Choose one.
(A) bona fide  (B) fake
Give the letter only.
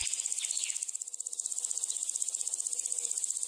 A